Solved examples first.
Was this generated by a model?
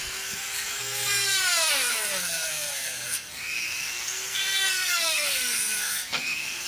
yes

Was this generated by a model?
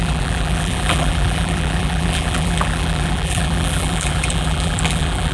yes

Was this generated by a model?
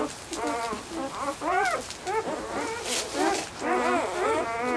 no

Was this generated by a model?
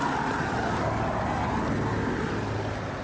no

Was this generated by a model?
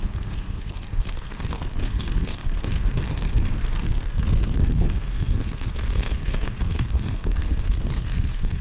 yes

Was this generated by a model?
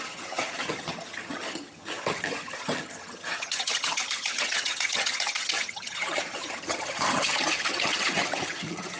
yes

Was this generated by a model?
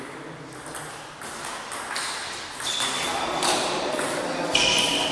no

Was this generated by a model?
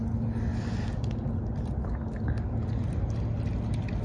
no